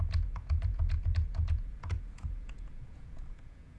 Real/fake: fake